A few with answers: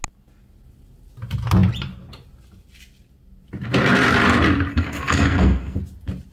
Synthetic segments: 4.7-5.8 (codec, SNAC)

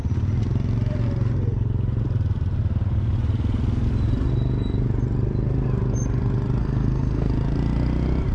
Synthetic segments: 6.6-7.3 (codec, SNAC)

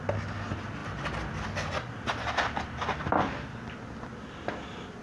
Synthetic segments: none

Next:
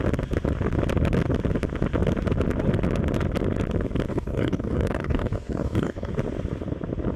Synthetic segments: 4.1-6.1 (codec, DAC)